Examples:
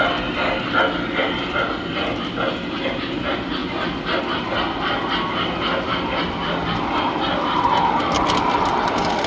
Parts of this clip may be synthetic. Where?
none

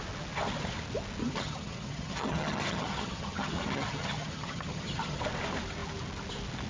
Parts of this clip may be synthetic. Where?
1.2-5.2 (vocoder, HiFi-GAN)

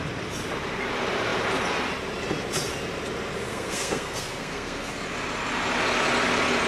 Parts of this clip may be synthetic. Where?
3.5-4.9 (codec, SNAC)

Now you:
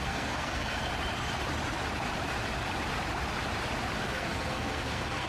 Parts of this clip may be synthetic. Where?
0.0-0.9 (codec, SNAC); 4.1-5.3